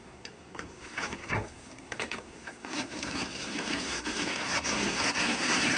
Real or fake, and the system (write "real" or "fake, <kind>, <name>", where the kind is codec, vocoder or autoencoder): fake, codec, SNAC